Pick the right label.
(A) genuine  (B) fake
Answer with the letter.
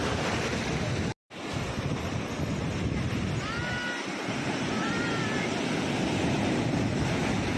A